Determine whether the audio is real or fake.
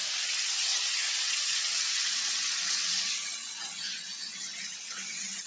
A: fake